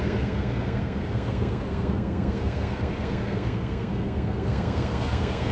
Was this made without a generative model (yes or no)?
no